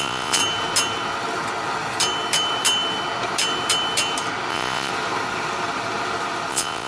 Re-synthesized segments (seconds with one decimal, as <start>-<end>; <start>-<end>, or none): 0.0-0.4; 4.5-4.9; 6.5-6.9